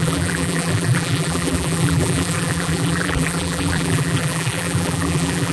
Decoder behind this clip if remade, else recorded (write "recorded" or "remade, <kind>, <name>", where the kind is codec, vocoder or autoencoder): remade, vocoder, BigVGAN v2